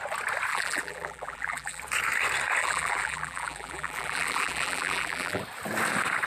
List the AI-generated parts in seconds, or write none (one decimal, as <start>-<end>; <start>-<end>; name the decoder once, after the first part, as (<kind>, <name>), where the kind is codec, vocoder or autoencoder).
0.5-1.8 (vocoder, BigVGAN v2); 2.6-5.4